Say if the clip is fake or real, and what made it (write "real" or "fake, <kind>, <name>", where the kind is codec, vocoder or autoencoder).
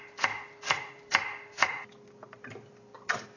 real